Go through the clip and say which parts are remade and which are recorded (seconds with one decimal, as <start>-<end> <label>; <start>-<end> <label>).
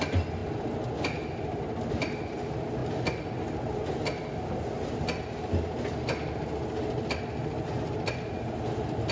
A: 0.0-9.1 recorded